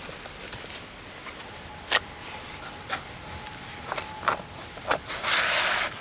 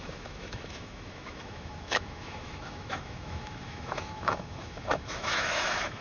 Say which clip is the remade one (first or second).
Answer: second